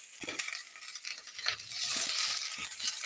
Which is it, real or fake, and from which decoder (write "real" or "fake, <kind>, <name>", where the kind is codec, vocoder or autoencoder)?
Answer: real